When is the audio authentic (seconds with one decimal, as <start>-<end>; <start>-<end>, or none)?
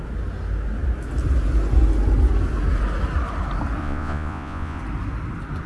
0.0-3.8; 4.8-5.7